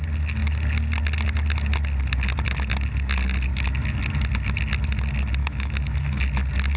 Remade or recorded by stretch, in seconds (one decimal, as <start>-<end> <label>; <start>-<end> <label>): 0.0-5.4 recorded; 5.4-6.2 remade; 6.2-6.8 recorded